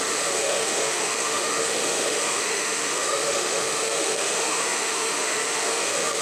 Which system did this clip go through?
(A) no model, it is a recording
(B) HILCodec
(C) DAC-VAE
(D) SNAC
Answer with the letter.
C